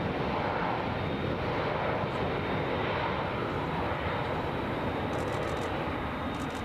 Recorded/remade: recorded